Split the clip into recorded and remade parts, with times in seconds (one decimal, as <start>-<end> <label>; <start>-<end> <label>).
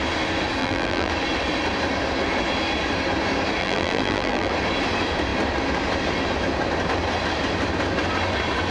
0.0-0.6 recorded; 0.6-1.1 remade; 1.1-3.6 recorded; 3.6-4.5 remade; 4.5-8.7 recorded